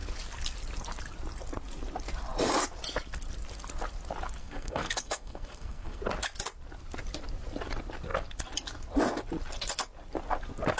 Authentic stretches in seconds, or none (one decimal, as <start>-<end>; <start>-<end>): 0.0-4.4; 6.0-10.8